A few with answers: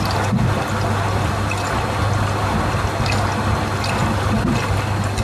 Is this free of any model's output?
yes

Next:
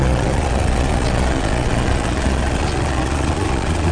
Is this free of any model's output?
no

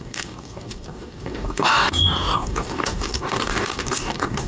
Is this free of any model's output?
no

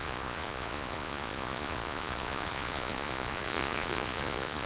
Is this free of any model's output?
no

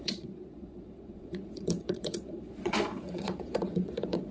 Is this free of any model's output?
no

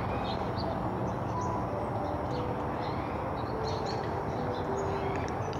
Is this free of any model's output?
yes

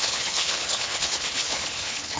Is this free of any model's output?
no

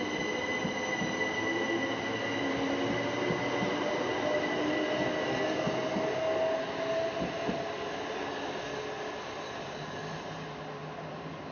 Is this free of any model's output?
yes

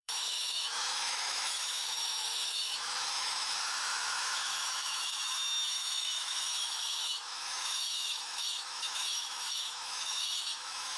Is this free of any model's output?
no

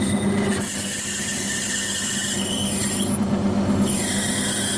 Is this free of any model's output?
yes